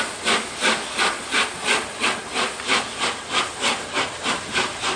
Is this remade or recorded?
recorded